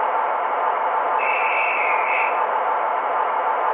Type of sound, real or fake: real